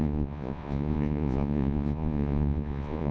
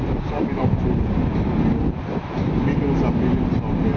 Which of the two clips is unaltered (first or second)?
second